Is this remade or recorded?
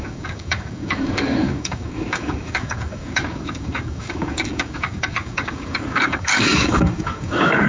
remade